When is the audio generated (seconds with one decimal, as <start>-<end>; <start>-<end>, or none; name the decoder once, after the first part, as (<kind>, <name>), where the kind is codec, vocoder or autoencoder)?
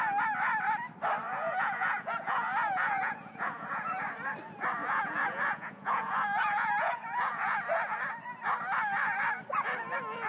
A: 1.3-4.0 (vocoder, Vocos); 4.8-7.5